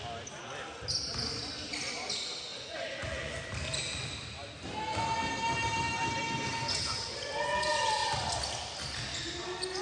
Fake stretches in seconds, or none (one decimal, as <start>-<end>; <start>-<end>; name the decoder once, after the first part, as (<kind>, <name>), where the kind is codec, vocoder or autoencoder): 2.5-3.4 (vocoder, Vocos)